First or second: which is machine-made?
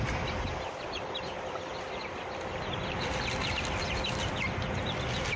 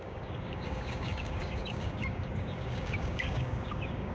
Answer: second